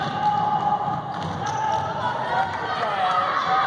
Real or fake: real